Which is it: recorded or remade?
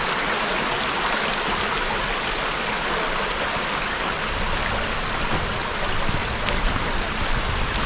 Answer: recorded